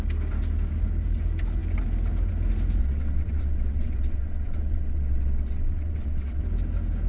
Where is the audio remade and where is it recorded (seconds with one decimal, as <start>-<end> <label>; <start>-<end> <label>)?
0.0-2.8 recorded; 2.8-6.4 remade; 6.4-7.1 recorded